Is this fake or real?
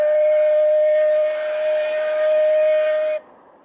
real